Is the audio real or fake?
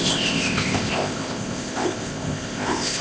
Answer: fake